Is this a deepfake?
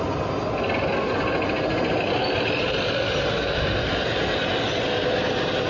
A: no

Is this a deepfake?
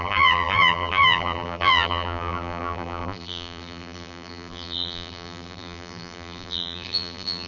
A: yes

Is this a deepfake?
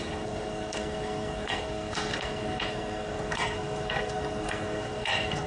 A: yes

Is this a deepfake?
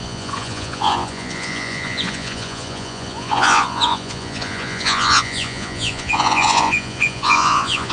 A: yes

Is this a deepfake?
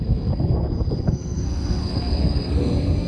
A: yes